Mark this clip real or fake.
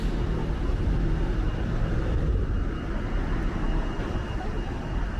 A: real